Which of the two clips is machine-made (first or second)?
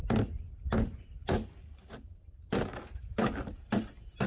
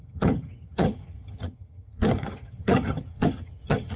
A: second